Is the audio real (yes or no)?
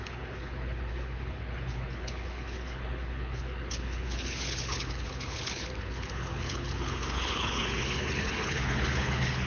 no